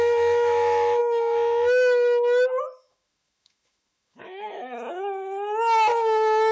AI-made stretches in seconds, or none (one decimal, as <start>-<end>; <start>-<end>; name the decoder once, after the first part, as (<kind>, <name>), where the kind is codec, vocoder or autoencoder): 0.0-6.5 (autoencoder, DAC-VAE)